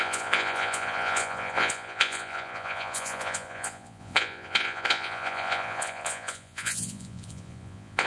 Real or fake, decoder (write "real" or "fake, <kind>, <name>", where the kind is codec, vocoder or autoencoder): fake, vocoder, Vocos